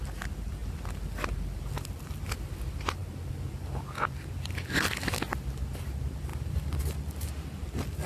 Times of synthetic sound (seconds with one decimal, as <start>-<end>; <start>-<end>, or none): none